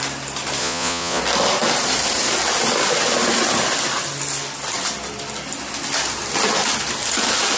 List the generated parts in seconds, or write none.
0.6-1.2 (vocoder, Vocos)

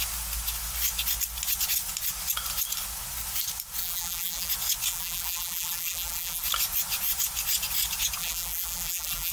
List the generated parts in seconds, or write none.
3.8-4.5 (vocoder, BigVGAN v2); 4.9-6.4; 8.2-9.3

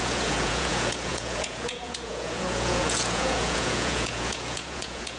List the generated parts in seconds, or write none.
0.0-5.2 (vocoder, Vocos)

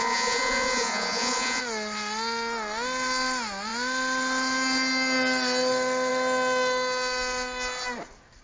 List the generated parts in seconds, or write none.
0.0-1.6 (vocoder, Vocos)

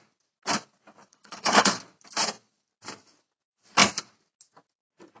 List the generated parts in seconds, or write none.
1.1-1.8 (codec, HILCodec)

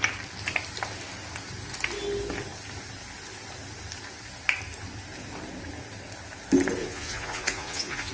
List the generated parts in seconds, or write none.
6.8-8.1 (vocoder, Vocos)

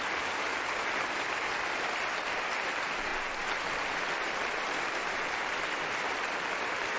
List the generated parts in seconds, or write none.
none

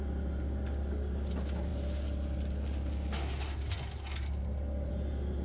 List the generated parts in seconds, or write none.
none